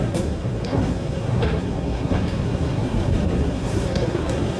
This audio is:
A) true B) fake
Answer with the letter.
B